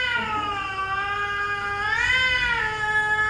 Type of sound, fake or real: real